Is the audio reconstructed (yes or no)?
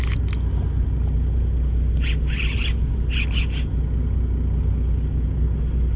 no